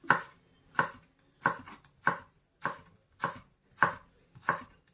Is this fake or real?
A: real